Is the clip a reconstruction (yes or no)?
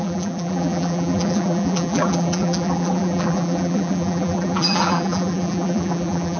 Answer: yes